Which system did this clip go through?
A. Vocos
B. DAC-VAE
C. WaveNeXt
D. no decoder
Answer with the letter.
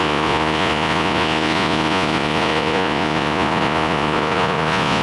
A